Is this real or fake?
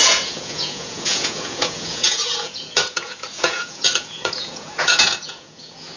fake